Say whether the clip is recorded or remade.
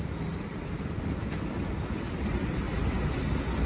recorded